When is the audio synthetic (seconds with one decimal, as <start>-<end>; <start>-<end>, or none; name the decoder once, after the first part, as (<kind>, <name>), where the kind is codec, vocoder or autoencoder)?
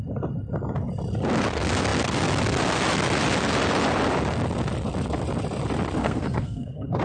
6.0-7.0 (codec, SNAC)